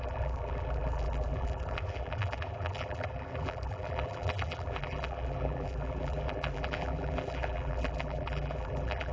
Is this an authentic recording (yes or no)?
no